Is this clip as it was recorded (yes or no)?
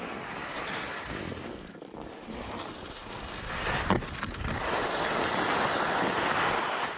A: yes